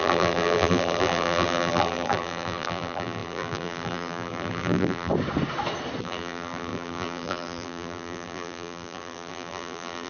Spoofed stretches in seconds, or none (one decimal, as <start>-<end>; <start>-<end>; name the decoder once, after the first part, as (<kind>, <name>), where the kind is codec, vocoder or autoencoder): 0.0-5.1 (vocoder, BigVGAN v2); 6.0-10.1